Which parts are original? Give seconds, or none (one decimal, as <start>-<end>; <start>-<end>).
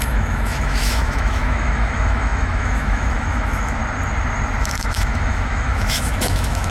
3.8-4.6